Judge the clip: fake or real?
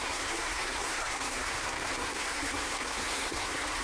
fake